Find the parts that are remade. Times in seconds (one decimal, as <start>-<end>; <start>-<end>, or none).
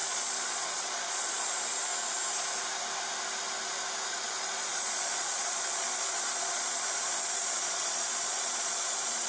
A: 0.0-1.9; 4.1-9.3